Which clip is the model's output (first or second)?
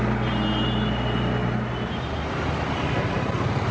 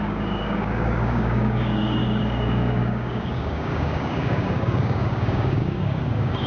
second